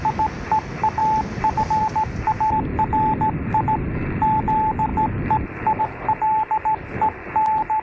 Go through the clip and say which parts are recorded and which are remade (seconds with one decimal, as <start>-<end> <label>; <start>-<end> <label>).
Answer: 0.0-7.8 recorded